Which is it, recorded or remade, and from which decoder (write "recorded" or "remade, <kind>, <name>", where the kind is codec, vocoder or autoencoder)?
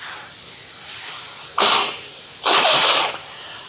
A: recorded